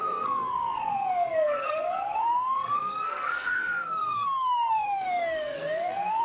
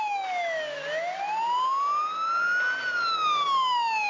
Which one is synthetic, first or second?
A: first